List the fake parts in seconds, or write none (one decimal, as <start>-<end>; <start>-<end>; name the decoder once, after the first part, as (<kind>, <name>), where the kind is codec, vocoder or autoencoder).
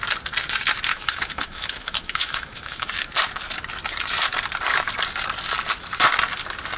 0.9-2.9 (autoencoder, DAC-VAE)